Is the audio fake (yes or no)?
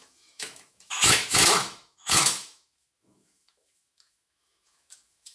yes